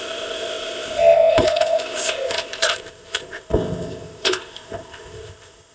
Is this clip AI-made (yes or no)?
yes